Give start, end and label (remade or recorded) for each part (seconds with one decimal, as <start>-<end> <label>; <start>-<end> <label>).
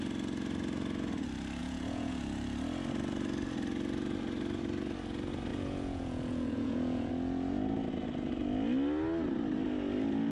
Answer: 0.0-1.6 recorded; 1.6-2.1 remade; 2.1-5.5 recorded; 5.5-7.1 remade; 7.1-10.3 recorded